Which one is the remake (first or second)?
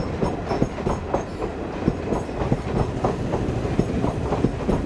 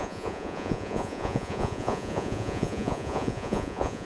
second